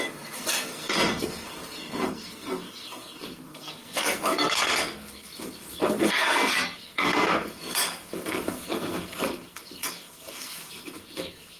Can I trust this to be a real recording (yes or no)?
no